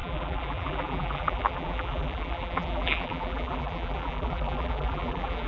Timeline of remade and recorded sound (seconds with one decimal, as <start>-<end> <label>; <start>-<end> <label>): 0.0-5.5 remade